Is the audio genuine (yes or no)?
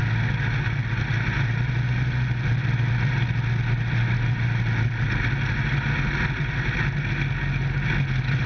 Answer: yes